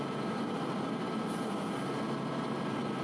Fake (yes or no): no